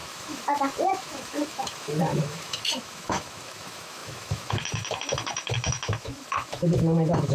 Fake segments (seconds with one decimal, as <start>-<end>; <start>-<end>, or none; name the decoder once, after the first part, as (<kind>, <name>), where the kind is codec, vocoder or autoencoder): 0.0-7.3 (autoencoder, DAC-VAE)